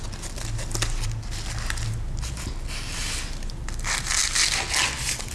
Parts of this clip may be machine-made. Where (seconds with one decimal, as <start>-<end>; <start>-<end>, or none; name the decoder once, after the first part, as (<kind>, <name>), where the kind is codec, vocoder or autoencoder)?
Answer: none